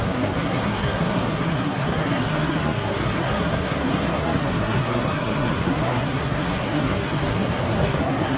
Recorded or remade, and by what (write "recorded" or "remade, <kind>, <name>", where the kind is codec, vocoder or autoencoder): remade, codec, SNAC